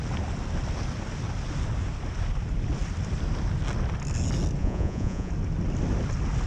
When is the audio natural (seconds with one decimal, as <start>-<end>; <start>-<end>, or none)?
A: 0.0-4.6; 5.3-6.5